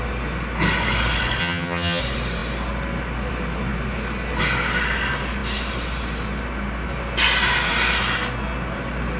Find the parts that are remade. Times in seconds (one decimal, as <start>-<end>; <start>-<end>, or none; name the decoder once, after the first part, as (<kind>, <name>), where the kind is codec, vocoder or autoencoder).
1.4-2.0 (vocoder, HiFi-GAN)